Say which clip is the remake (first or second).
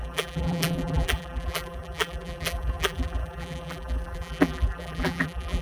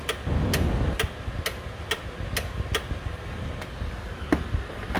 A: first